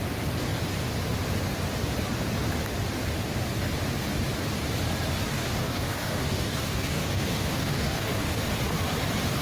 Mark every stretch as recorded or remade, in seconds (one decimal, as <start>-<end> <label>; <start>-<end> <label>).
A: 0.0-5.3 recorded; 5.3-8.4 remade; 8.4-9.4 recorded